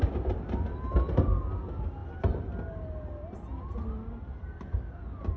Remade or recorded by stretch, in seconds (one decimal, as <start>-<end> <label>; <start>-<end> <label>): 0.0-5.4 recorded